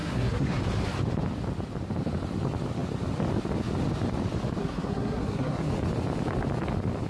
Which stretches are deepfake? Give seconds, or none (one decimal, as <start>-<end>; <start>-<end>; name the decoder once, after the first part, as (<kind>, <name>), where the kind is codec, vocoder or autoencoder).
0.0-0.6 (codec, SNAC); 4.6-5.7